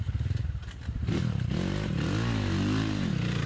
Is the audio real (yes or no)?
no